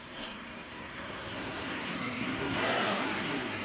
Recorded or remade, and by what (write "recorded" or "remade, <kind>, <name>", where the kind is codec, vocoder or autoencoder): remade, codec, SNAC